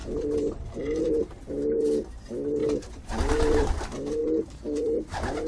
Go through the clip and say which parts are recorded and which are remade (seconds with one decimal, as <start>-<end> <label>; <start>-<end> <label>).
0.0-1.0 remade; 1.0-2.6 recorded; 2.6-3.7 remade; 3.7-4.2 recorded; 4.2-5.1 remade; 5.1-5.5 recorded